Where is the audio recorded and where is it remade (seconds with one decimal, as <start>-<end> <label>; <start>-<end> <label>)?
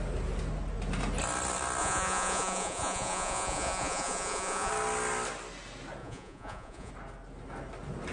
0.0-1.8 recorded; 1.8-4.7 remade; 4.7-6.0 recorded; 6.0-6.9 remade; 6.9-8.1 recorded